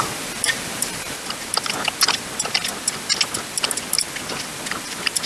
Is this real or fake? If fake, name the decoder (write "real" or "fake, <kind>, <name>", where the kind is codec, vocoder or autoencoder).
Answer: real